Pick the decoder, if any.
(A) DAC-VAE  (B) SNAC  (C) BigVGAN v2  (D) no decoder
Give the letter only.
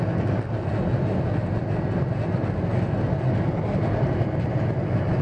D